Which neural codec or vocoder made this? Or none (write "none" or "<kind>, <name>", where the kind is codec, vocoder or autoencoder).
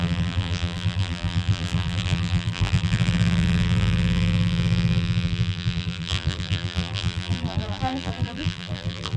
vocoder, BigVGAN v2